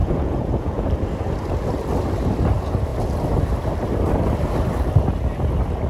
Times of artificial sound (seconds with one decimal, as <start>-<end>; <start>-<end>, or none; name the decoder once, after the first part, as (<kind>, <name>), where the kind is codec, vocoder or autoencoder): 0.0-0.9 (vocoder, Vocos)